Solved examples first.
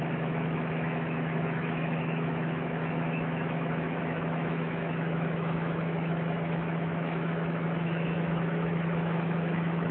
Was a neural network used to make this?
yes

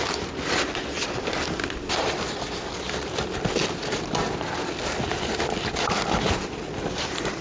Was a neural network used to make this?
no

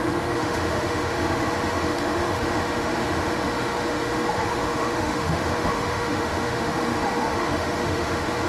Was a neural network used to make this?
yes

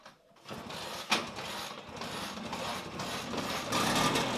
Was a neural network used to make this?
no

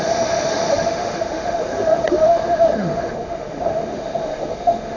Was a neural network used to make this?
yes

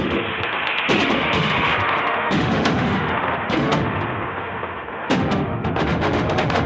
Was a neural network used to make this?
yes